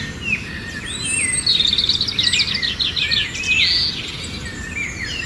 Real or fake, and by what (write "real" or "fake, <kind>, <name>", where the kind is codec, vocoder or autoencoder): real